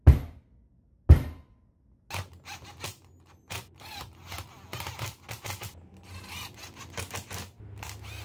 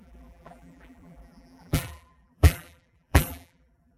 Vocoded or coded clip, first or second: second